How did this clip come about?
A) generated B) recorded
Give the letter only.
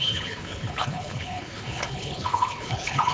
A